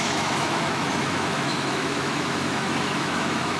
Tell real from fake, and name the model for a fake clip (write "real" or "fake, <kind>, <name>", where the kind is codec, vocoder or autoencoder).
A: fake, autoencoder, DAC-VAE